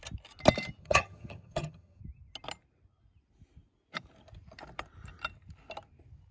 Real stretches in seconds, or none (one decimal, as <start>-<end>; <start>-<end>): 0.0-0.8; 2.0-6.3